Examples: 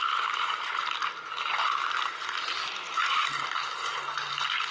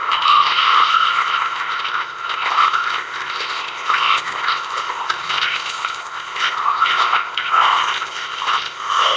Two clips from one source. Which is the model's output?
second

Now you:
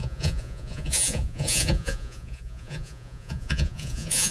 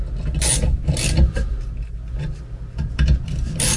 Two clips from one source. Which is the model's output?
first